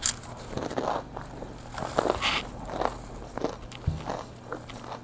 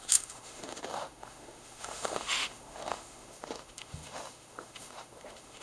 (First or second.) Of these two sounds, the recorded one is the first